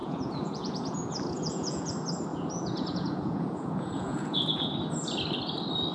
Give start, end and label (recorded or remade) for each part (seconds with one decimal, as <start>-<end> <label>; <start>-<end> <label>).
0.0-1.9 remade; 1.9-2.3 recorded; 2.3-4.7 remade; 4.7-5.9 recorded